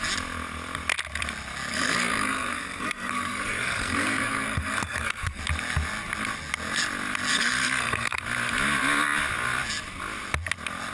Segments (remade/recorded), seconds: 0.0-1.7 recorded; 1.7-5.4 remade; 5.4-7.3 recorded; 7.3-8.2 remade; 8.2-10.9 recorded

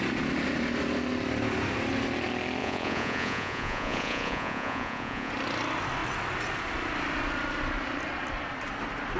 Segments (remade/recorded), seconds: 0.0-2.6 recorded; 2.6-5.3 remade; 5.3-9.2 recorded

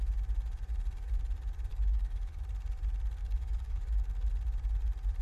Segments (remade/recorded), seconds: 0.0-1.7 recorded; 1.7-2.4 remade; 2.4-3.2 recorded; 3.2-4.3 remade; 4.3-5.2 recorded